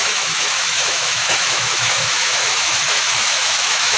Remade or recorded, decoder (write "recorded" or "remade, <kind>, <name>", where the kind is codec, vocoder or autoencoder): remade, autoencoder, DAC-VAE